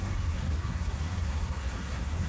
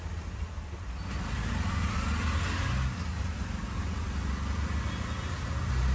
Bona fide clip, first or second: second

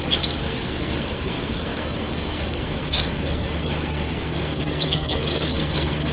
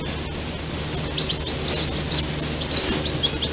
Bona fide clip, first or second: second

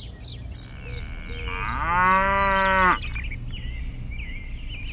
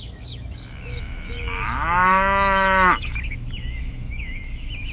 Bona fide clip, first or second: first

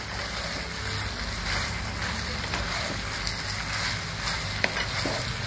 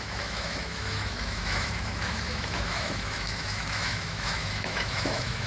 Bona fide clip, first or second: first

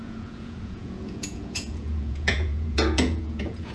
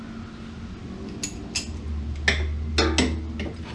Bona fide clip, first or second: second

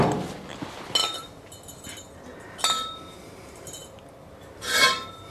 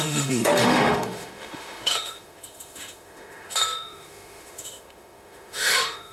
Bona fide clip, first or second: first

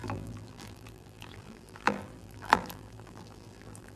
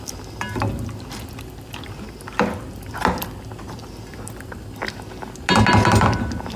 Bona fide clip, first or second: second